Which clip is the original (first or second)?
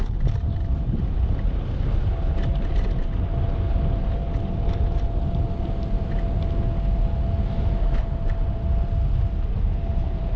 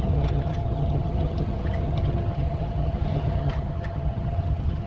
first